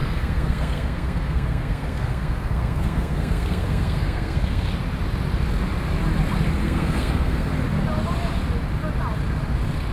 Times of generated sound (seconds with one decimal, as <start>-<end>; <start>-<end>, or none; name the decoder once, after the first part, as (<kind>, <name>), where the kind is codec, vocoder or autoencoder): 0.0-4.7 (codec, SNAC); 6.6-7.5